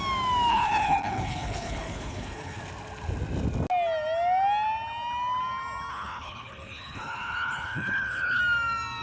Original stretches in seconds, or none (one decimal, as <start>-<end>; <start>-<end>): 0.0-0.5; 2.6-5.9; 8.4-9.0